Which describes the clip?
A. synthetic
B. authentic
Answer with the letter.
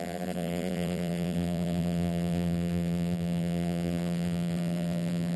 A